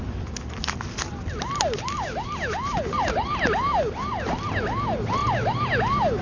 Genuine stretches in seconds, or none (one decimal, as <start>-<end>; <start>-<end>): 0.0-6.2